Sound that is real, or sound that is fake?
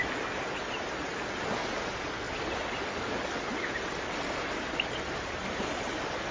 real